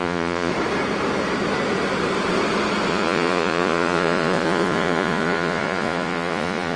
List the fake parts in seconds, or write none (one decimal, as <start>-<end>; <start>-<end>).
0.0-0.5; 2.9-6.8